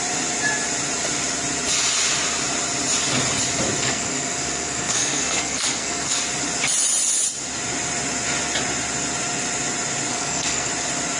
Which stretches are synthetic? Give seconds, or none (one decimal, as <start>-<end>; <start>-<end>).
3.8-6.2; 10.1-10.7